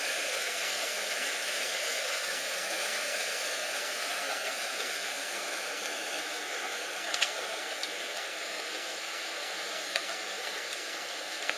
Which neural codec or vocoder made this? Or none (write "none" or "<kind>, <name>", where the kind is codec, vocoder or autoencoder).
codec, SNAC